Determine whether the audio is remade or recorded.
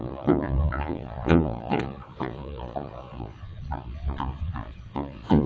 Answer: remade